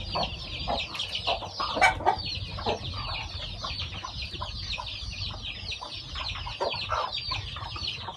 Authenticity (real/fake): real